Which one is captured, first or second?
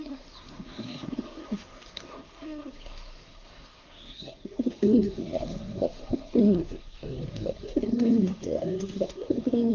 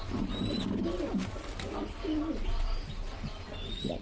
second